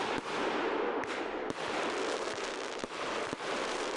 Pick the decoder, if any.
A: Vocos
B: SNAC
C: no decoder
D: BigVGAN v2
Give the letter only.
C